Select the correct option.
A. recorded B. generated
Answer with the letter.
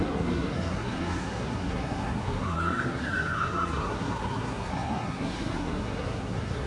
B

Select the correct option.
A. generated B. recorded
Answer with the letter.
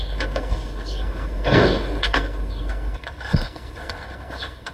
A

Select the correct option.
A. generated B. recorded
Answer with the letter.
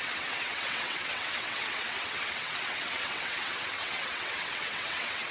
A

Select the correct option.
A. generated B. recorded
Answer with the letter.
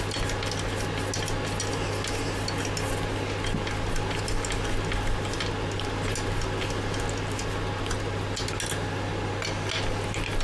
B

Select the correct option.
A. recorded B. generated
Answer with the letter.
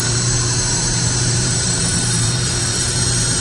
B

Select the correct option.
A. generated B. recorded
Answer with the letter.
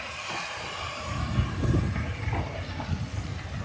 B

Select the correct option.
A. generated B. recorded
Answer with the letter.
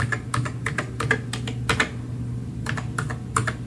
B